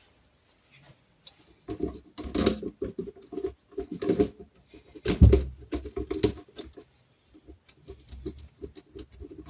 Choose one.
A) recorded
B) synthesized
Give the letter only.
A